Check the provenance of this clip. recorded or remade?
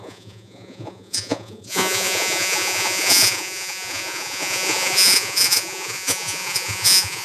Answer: remade